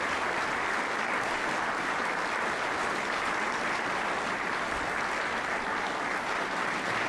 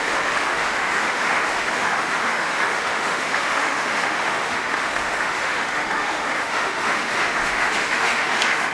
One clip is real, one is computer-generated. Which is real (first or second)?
first